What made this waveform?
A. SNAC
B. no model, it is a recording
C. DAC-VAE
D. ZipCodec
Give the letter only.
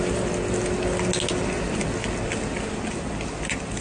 B